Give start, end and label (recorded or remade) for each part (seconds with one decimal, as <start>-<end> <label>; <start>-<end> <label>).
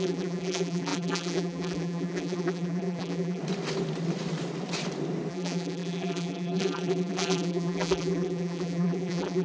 0.0-3.4 remade; 3.4-5.3 recorded; 5.3-9.4 remade